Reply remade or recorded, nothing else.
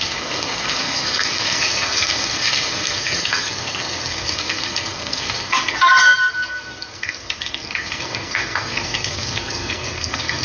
remade